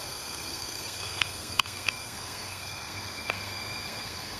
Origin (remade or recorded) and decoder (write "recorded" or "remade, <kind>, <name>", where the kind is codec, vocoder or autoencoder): remade, codec, SNAC